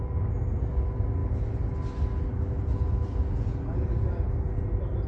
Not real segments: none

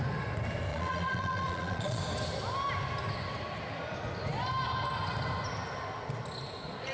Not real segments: 0.7-2.0

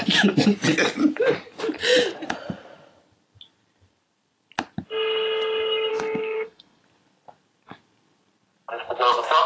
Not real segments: 5.9-6.8

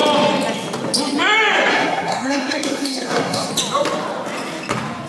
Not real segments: 1.7-3.5

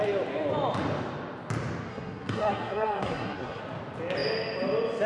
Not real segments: 1.9-3.6

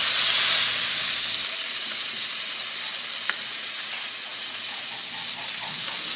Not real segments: 1.8-2.6; 3.4-4.9

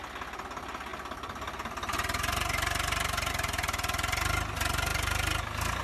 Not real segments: none

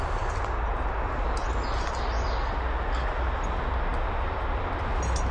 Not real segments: none